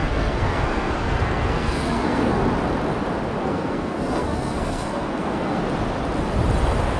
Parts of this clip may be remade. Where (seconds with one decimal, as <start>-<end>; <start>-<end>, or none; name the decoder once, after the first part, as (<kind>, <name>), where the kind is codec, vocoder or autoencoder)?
0.0-2.4 (codec, SNAC); 3.4-5.6